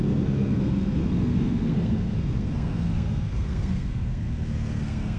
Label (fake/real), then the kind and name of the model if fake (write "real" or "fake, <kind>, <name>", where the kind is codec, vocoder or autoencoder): fake, codec, SNAC